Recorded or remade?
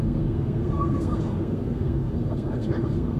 remade